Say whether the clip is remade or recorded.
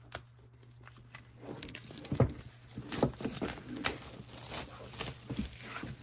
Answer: recorded